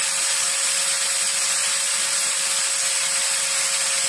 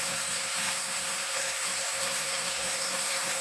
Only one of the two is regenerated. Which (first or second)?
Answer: second